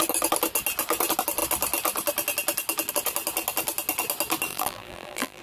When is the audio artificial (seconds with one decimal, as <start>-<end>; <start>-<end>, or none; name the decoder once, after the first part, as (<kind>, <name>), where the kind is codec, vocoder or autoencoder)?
4.5-5.4 (vocoder, BigVGAN v2)